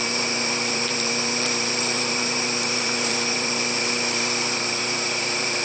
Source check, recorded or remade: remade